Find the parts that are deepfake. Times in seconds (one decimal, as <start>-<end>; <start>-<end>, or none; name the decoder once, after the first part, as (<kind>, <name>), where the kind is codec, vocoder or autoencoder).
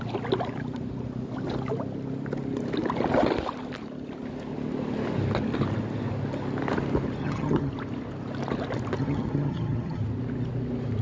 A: 7.2-7.7 (vocoder, HiFi-GAN); 9.0-10.0